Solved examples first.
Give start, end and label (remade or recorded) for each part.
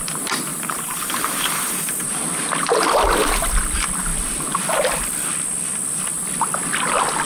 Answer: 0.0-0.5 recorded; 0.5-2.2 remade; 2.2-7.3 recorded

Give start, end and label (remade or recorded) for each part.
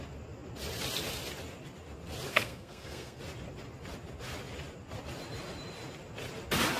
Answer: 0.0-2.3 recorded; 2.3-3.2 remade; 3.2-6.8 recorded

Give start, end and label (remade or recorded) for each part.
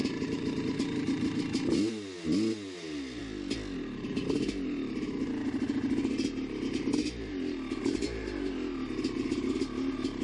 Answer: 0.0-1.4 remade; 1.4-10.2 recorded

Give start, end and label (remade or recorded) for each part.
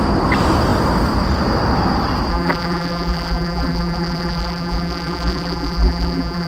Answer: 0.0-2.3 recorded; 2.3-6.5 remade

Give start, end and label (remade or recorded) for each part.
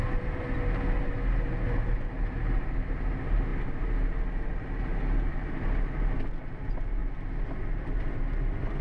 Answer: 0.0-8.8 recorded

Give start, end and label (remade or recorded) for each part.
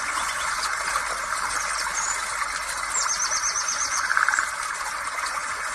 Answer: 0.0-0.7 remade; 0.7-3.6 recorded; 3.6-4.1 remade; 4.1-5.2 recorded; 5.2-5.7 remade